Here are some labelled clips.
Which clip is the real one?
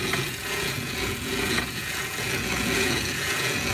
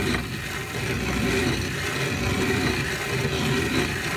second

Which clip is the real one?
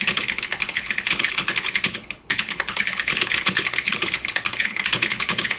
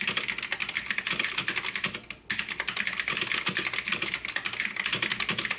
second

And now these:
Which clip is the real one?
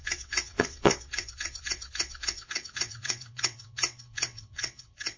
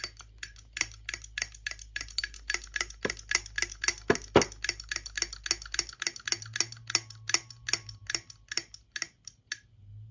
second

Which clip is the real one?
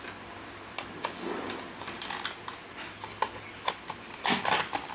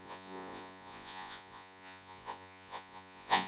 first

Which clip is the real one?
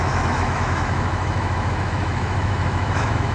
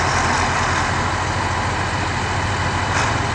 second